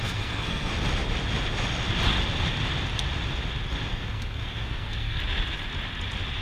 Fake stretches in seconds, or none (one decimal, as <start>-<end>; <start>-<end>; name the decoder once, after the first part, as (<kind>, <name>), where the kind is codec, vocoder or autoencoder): 0.0-0.7 (codec, SNAC); 3.9-5.2